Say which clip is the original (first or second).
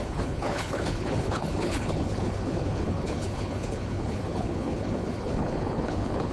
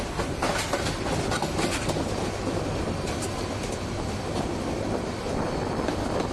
second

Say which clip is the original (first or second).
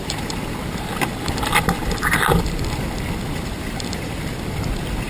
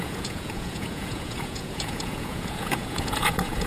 first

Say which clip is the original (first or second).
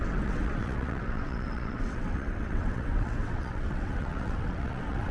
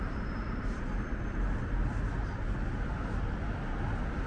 second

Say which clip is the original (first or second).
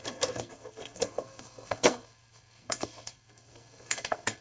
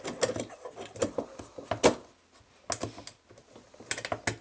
second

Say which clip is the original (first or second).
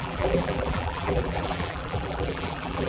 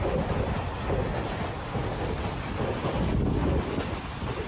second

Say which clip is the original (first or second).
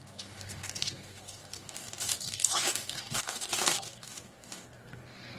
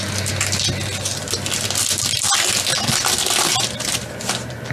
second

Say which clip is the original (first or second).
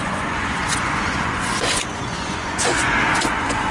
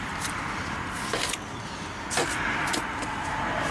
second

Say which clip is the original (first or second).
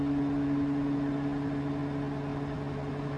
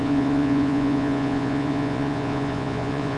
first